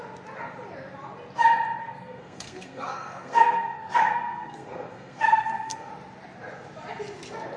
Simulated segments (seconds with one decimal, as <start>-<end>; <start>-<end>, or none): 1.8-5.9